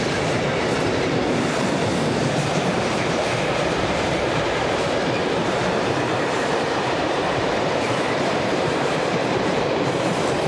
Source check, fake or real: fake